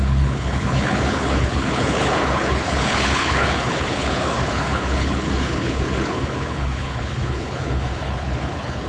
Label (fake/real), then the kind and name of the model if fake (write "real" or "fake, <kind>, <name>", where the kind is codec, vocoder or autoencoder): fake, codec, HILCodec